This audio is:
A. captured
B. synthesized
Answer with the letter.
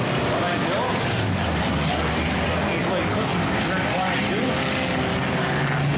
A